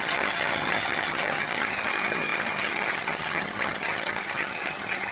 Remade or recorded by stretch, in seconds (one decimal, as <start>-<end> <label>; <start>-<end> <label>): 0.0-5.1 remade